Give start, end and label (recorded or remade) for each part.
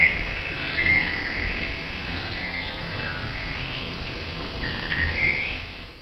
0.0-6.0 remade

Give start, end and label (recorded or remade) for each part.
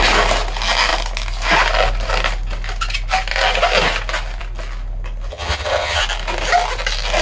0.0-5.3 recorded; 5.3-6.0 remade; 6.0-7.2 recorded